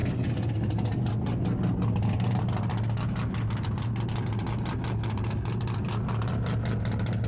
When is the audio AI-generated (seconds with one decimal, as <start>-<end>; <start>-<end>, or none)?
none